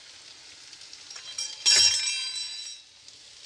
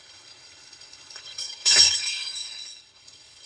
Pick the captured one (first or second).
first